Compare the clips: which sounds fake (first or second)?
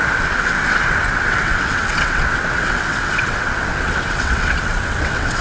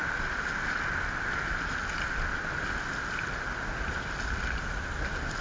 first